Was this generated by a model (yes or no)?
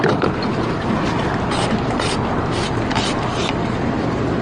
no